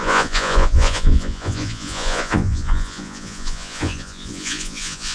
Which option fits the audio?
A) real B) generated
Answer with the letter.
B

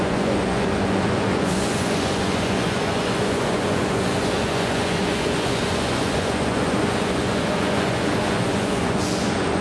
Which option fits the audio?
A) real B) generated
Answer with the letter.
B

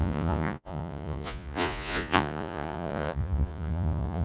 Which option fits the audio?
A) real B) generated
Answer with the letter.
B